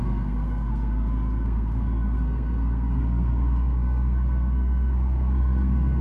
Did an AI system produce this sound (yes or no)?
yes